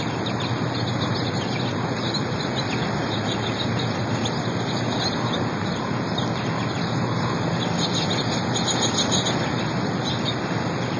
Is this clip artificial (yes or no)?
no